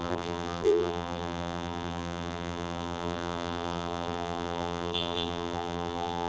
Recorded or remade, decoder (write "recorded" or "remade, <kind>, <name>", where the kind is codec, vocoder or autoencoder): remade, vocoder, BigVGAN v2